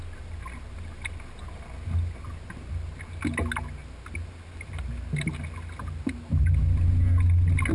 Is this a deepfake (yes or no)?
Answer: no